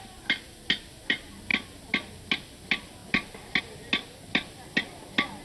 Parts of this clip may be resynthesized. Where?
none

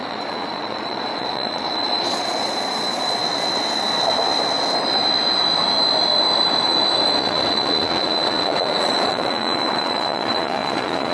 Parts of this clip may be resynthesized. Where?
0.0-3.2 (vocoder, Vocos); 7.2-11.1